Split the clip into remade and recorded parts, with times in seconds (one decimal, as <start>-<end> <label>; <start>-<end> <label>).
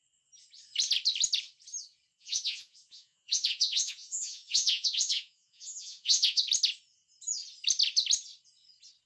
0.0-2.1 recorded; 2.1-6.4 remade; 6.4-9.1 recorded